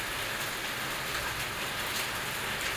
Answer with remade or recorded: recorded